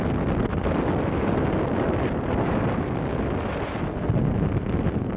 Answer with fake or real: real